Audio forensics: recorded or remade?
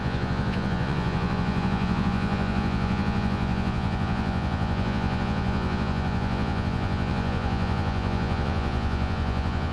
remade